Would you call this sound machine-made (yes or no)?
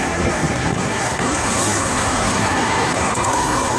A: yes